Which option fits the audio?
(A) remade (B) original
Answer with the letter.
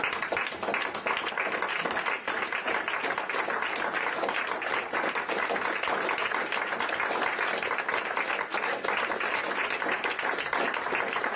B